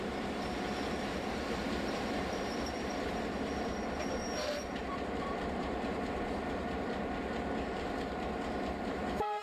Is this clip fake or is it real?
fake